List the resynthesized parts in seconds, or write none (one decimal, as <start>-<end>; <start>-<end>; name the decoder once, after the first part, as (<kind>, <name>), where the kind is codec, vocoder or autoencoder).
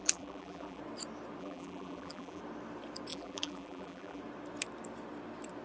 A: 0.0-0.8 (vocoder, BigVGAN v2); 1.4-2.4; 3.1-4.2